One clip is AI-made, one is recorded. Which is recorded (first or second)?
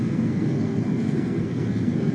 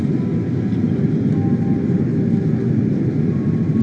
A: second